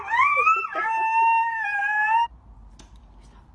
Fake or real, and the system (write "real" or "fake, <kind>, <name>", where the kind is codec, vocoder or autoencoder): real